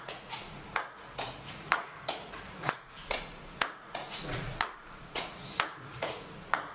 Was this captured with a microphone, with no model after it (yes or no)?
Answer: no